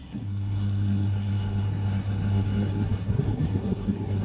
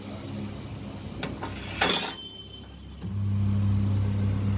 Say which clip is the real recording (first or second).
second